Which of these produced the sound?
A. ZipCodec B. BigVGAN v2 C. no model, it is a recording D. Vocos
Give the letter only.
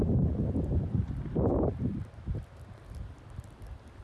C